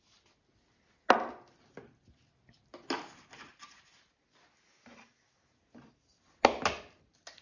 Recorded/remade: recorded